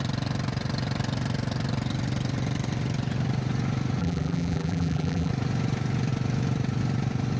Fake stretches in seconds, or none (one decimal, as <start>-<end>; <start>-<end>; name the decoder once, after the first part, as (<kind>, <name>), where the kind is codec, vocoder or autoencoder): 4.0-5.3 (vocoder, BigVGAN v2)